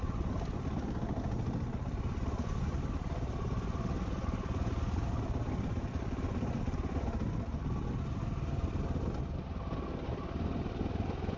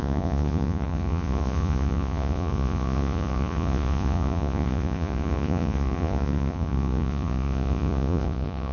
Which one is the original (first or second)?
first